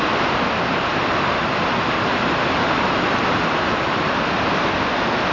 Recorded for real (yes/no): yes